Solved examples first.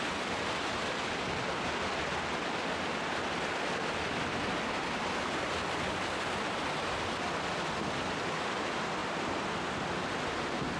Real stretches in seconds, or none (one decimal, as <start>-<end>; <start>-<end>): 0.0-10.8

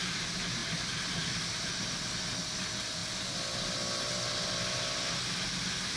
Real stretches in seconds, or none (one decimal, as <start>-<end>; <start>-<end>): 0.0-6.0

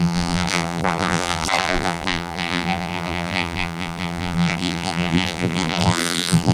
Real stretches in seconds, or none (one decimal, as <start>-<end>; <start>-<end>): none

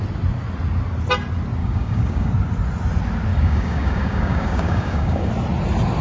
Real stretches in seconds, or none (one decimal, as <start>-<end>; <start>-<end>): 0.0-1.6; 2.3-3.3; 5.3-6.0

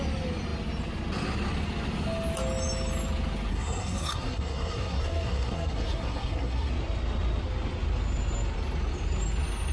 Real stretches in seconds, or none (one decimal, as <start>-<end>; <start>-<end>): 0.0-3.5; 6.7-9.7

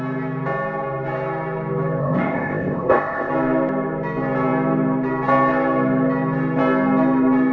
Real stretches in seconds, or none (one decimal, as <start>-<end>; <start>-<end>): 0.0-2.0; 3.3-7.5

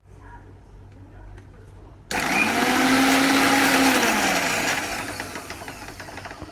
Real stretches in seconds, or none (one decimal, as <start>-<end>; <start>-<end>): 0.0-6.5